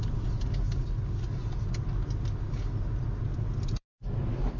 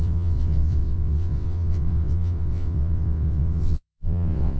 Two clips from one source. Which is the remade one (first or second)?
second